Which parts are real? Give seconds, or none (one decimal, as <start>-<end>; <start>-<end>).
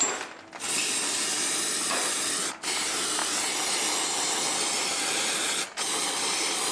0.0-6.7